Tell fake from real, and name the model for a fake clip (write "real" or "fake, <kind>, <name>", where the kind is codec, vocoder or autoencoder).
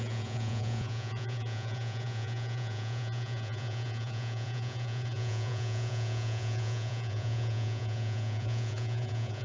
fake, vocoder, Vocos